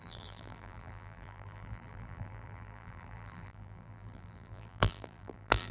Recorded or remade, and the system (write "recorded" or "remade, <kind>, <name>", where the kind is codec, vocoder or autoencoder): remade, vocoder, BigVGAN v2